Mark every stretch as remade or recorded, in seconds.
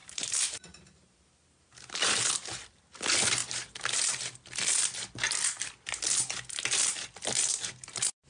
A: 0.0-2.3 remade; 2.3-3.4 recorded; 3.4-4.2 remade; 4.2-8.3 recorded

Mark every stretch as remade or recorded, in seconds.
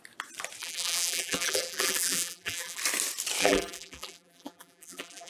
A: 0.0-0.6 recorded; 0.6-2.8 remade; 2.8-3.4 recorded; 3.4-5.3 remade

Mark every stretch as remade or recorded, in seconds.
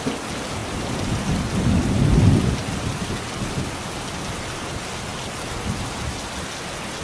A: 0.0-0.6 recorded; 0.6-3.0 remade; 3.0-7.0 recorded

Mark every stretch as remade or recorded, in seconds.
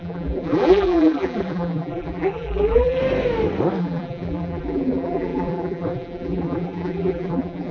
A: 0.0-3.0 remade; 3.0-3.8 recorded; 3.8-7.7 remade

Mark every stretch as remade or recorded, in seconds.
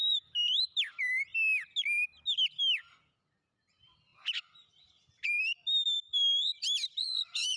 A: 0.0-1.3 remade; 1.3-3.2 recorded; 3.2-7.6 remade